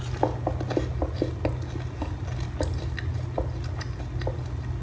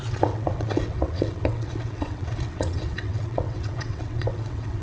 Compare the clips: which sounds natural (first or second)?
first